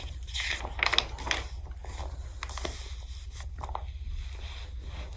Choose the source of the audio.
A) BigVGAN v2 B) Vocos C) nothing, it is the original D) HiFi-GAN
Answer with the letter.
C